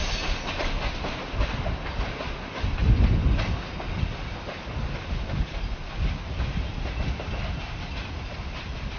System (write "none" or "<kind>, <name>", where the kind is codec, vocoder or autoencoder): none